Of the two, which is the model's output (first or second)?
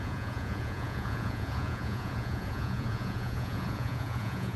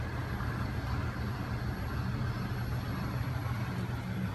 first